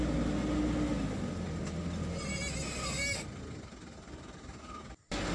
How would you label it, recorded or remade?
recorded